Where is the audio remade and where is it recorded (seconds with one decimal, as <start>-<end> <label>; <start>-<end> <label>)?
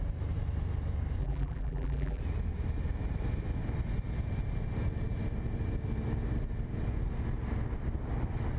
0.0-1.2 recorded; 1.2-2.2 remade; 2.2-8.6 recorded